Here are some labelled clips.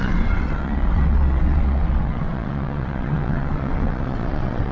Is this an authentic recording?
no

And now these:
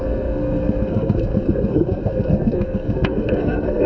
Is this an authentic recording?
no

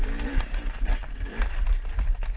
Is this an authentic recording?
yes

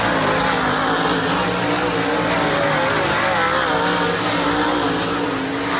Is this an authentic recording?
yes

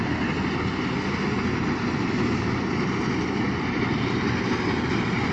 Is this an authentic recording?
yes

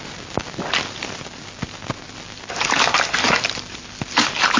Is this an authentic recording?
yes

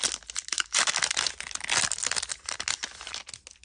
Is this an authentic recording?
yes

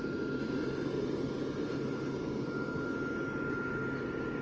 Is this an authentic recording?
yes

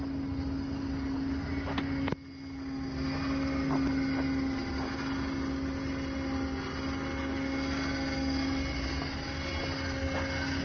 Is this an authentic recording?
yes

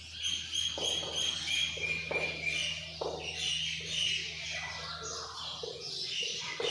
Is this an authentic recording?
yes